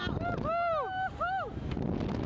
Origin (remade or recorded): recorded